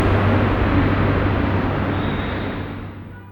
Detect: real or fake real